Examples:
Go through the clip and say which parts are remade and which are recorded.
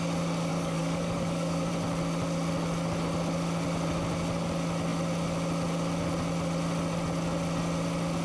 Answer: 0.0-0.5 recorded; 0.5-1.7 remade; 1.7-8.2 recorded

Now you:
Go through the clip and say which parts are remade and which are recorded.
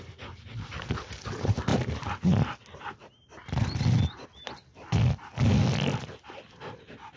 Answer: 0.0-7.2 recorded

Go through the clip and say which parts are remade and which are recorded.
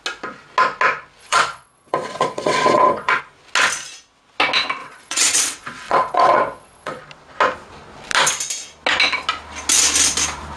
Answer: 0.0-1.2 recorded; 1.2-3.2 remade; 3.2-4.8 recorded; 4.8-7.0 remade; 7.0-10.6 recorded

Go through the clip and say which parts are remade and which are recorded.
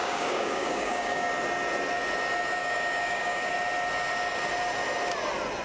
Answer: 0.0-1.3 remade; 1.3-2.6 recorded; 2.6-3.5 remade; 3.5-5.6 recorded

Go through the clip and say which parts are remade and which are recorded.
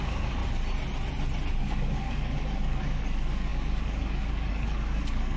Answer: 0.0-0.4 remade; 0.4-1.6 recorded; 1.6-5.4 remade